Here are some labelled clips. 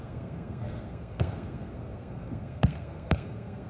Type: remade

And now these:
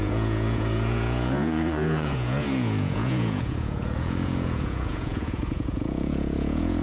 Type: remade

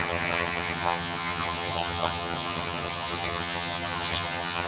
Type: remade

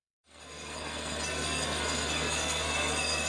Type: remade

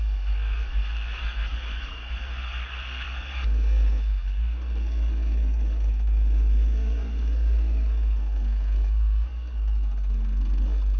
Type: remade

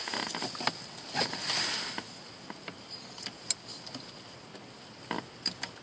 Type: recorded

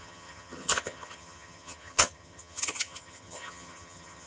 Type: remade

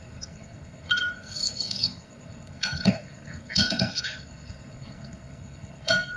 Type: remade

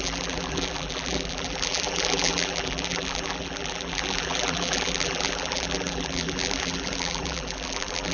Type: remade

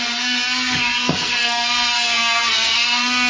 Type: remade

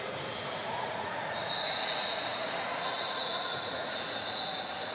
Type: remade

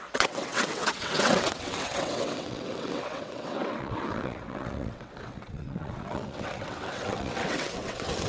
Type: remade